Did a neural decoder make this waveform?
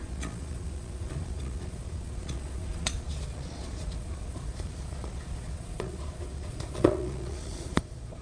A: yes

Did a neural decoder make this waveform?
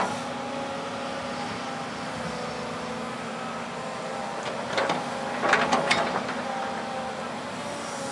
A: no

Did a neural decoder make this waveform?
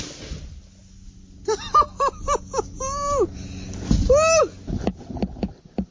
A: no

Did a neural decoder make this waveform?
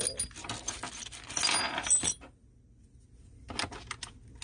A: no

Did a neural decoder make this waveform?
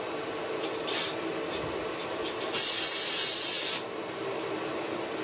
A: no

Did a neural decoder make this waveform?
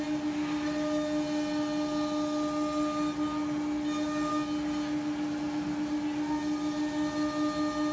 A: no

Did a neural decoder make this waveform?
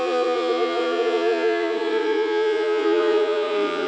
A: yes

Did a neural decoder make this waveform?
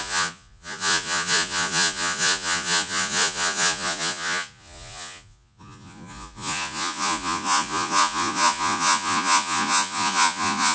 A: yes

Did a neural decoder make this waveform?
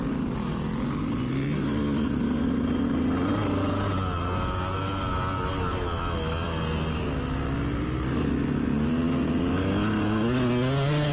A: no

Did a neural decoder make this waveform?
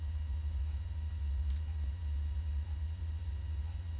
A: yes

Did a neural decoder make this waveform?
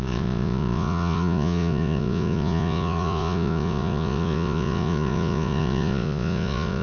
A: yes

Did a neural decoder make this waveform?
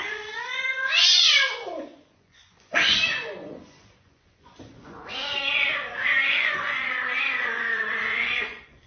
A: yes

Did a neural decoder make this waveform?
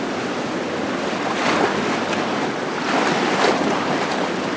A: no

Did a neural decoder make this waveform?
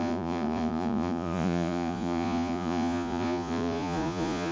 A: yes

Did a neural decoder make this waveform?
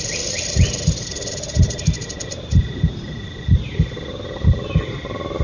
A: no